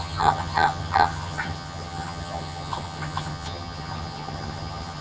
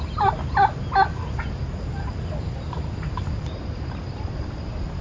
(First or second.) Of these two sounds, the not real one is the first